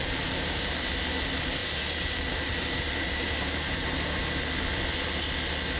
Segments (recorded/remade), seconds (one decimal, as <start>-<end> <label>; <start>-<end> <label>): 0.0-0.7 remade; 0.7-1.6 recorded; 1.6-4.2 remade; 4.2-5.8 recorded